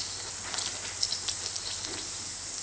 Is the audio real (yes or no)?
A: yes